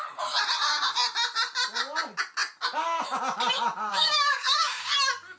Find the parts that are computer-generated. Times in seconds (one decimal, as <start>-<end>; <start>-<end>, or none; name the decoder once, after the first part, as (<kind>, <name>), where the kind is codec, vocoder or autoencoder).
3.9-4.9 (codec, DAC)